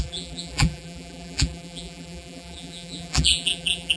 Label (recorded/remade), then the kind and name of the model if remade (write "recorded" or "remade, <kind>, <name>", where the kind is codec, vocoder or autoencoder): remade, vocoder, BigVGAN v2